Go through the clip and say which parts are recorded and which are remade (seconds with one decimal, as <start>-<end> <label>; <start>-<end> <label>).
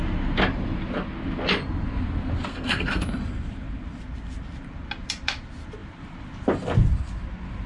0.0-2.5 recorded; 2.5-3.0 remade; 3.0-7.7 recorded